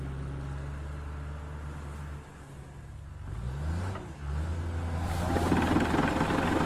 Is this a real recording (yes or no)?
yes